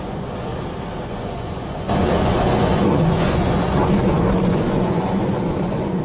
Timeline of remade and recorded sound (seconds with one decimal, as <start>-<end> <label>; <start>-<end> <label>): 0.0-0.5 remade; 0.5-1.0 recorded; 1.0-6.0 remade